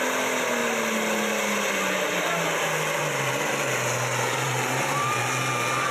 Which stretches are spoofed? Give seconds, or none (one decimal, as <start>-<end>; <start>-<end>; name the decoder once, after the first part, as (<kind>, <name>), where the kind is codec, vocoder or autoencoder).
3.0-5.2 (vocoder, BigVGAN v2)